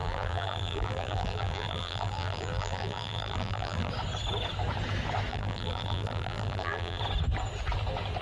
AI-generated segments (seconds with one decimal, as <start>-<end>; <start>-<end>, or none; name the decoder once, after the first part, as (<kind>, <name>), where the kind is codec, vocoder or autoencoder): 0.0-3.9 (vocoder, BigVGAN v2); 5.3-7.0